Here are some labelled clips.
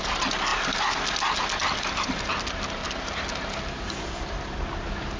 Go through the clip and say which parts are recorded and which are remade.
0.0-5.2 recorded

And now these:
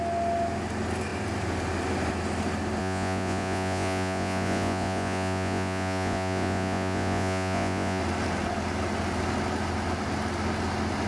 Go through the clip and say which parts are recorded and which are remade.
0.0-2.8 recorded; 2.8-8.0 remade; 8.0-11.1 recorded